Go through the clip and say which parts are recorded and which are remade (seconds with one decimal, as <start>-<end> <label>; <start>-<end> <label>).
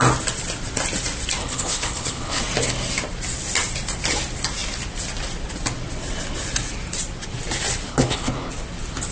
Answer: 0.0-1.4 recorded; 1.4-2.4 remade; 2.4-7.9 recorded; 7.9-8.5 remade; 8.5-9.1 recorded